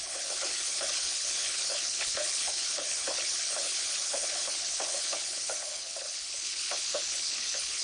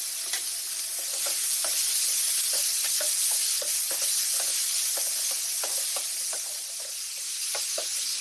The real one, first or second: second